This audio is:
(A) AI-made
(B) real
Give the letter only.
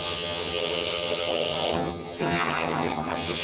A